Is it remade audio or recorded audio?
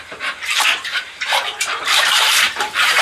remade